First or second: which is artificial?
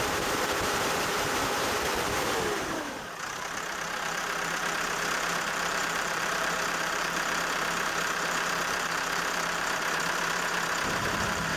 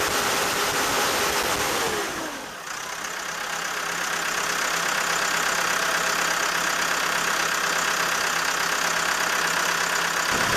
first